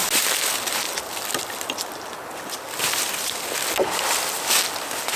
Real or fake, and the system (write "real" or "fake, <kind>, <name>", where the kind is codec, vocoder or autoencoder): real